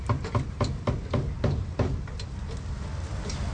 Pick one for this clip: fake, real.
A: real